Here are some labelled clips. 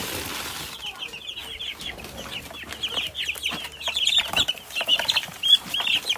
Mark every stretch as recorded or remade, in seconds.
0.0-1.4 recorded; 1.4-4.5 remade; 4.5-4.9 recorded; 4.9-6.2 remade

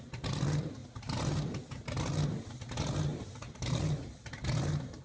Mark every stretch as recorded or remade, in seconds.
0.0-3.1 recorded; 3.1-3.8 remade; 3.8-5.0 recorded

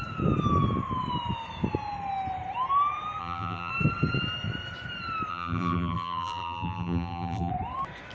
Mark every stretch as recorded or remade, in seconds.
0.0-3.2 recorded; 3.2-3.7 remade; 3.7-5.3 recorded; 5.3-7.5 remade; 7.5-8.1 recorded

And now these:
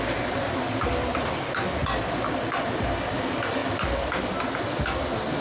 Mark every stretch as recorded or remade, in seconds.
0.0-5.4 recorded